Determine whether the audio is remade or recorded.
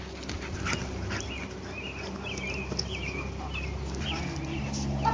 recorded